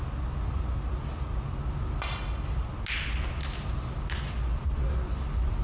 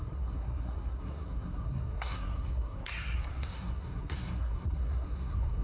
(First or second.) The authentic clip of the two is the first